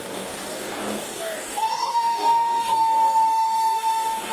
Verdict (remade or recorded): remade